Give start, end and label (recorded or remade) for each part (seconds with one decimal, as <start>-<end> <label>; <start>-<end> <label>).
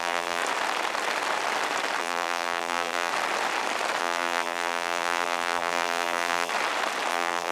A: 0.0-0.4 remade; 0.4-2.0 recorded; 2.0-3.1 remade; 3.1-4.0 recorded; 4.0-6.5 remade; 6.5-7.1 recorded; 7.1-7.5 remade